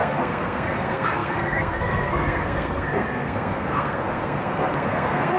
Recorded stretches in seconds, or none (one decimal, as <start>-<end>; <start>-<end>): none

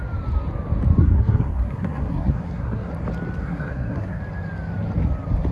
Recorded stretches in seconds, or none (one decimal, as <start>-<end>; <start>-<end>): 0.0-1.0; 2.9-3.4; 4.2-5.5

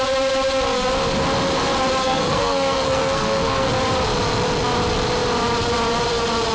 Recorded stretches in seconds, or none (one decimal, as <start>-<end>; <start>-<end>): 0.0-2.0; 3.7-6.5

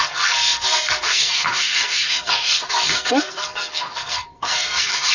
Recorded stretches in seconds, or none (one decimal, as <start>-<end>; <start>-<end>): none